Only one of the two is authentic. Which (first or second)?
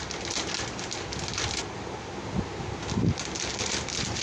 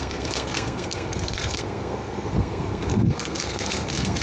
first